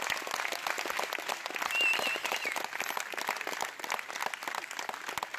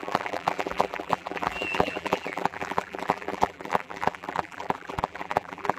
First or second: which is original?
first